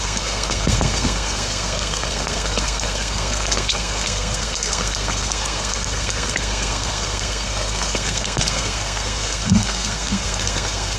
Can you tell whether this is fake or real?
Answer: fake